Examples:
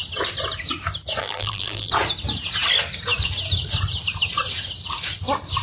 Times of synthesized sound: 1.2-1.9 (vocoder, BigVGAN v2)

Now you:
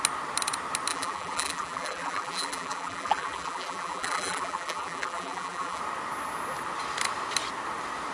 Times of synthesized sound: 0.9-5.8 (vocoder, BigVGAN v2)

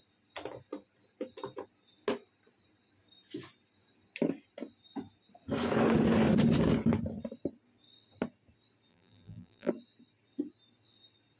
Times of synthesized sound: 8.9-9.7 (vocoder, BigVGAN v2)

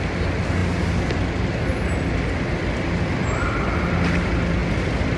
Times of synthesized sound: none

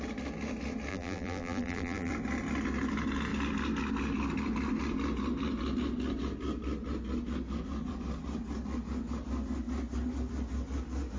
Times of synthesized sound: 0.9-2.1 (vocoder, BigVGAN v2)

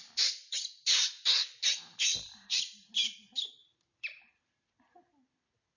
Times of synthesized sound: 2.1-2.6 (vocoder, BigVGAN v2); 3.6-4.4